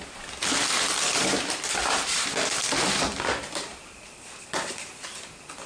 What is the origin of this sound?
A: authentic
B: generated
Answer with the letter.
B